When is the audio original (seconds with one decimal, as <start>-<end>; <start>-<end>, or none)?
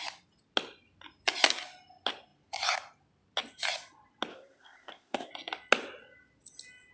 0.0-4.3; 5.3-6.9